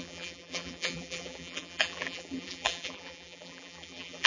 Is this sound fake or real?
fake